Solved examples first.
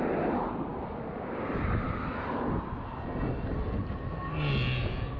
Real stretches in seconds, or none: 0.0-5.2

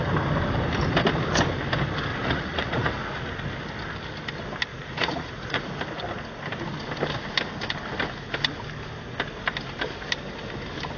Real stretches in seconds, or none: 0.0-2.1; 3.3-4.7; 5.8-11.0

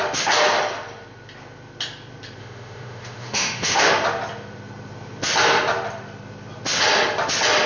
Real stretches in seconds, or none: 0.0-2.4; 3.9-7.7